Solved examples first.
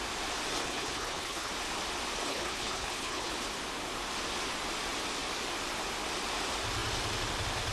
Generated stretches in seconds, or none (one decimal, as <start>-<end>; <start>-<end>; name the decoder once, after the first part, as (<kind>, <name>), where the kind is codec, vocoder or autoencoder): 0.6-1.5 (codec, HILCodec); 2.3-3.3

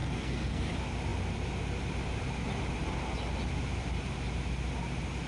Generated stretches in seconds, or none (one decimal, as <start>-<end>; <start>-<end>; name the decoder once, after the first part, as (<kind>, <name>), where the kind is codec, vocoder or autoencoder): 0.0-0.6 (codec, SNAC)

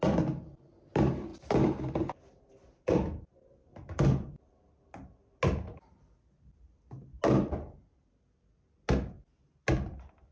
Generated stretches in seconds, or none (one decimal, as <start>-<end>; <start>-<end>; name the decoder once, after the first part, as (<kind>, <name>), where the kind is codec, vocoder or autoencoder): none